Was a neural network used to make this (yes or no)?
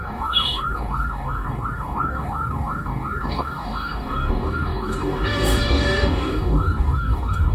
yes